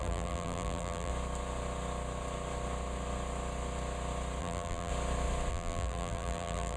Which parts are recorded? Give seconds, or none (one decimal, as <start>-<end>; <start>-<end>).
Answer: 1.1-4.4; 4.9-5.5